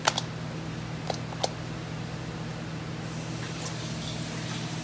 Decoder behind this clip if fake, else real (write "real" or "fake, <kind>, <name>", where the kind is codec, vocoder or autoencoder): real